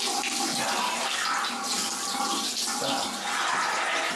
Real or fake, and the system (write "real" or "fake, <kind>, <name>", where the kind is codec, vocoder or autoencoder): real